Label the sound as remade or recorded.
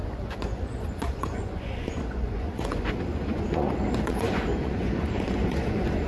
remade